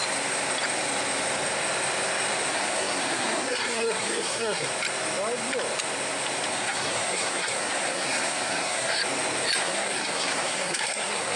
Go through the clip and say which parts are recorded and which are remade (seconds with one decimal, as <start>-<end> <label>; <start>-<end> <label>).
0.0-2.5 recorded; 2.5-4.7 remade; 4.7-6.5 recorded; 6.5-9.0 remade; 9.0-9.6 recorded; 9.6-11.4 remade